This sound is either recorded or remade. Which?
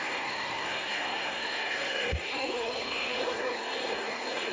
remade